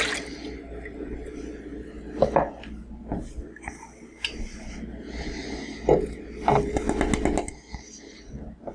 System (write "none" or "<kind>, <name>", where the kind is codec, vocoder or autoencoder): none